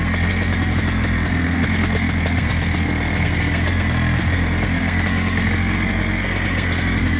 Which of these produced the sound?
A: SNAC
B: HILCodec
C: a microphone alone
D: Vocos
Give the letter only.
A